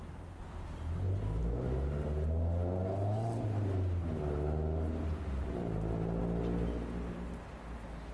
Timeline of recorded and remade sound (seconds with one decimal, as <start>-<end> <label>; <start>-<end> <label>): 0.0-8.1 recorded